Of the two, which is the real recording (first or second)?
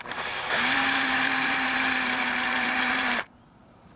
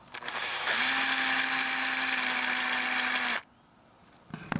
second